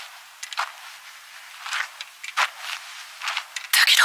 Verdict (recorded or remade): recorded